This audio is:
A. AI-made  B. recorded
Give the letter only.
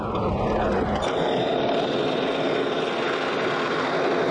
A